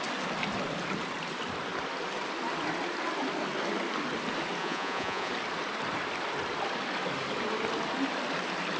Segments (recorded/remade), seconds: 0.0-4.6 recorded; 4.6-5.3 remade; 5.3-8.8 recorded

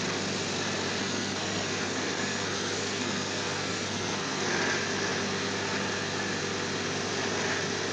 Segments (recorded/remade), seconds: 0.0-1.0 recorded; 1.0-4.5 remade; 4.5-7.9 recorded

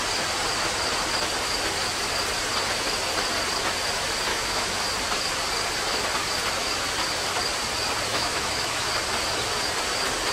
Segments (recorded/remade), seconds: 0.0-4.3 recorded; 4.3-4.8 remade; 4.8-8.1 recorded; 8.1-8.9 remade; 8.9-10.3 recorded

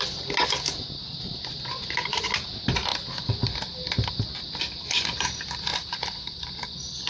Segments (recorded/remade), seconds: 0.0-5.7 recorded; 5.7-7.1 remade

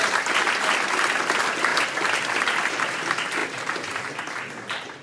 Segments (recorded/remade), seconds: 0.0-1.7 recorded; 1.7-2.8 remade; 2.8-5.0 recorded